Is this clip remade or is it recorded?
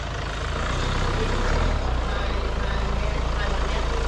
recorded